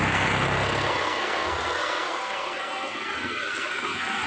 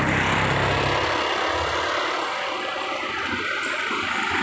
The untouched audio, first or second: second